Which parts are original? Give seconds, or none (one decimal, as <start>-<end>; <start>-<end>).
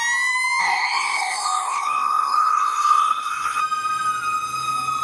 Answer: 0.0-0.6; 3.6-5.0